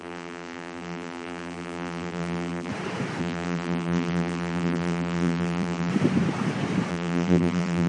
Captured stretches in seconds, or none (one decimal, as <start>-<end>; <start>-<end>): 2.7-3.2; 5.9-6.9

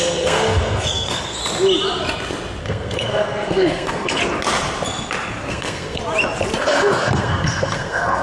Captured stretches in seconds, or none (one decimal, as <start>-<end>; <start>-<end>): 1.4-2.6; 4.2-5.5; 6.0-6.6

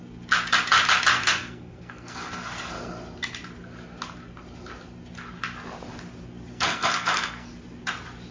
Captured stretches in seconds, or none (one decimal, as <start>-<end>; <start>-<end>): 0.0-1.1; 2.9-6.5; 7.5-8.3

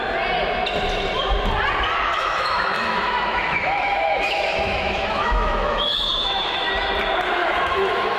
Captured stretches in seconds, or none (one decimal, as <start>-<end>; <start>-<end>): 0.0-2.1; 6.7-7.4

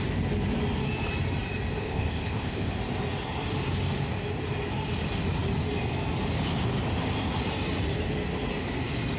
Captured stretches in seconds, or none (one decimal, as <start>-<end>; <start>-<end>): 0.0-1.8; 2.7-9.2

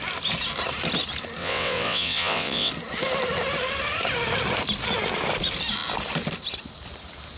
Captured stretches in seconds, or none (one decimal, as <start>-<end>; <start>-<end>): 0.0-1.4; 2.7-7.4

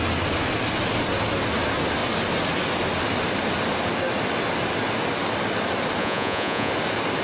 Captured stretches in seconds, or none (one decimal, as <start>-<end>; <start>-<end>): 0.0-6.0; 6.7-7.2

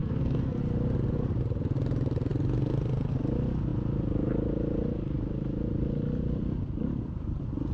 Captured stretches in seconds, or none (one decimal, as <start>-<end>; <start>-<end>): 0.6-7.7